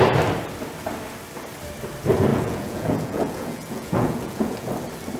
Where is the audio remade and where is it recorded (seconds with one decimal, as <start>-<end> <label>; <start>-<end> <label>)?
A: 0.0-2.3 recorded; 2.3-4.7 remade; 4.7-5.2 recorded